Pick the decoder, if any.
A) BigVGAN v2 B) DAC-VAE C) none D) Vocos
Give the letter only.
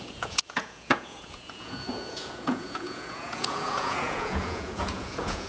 D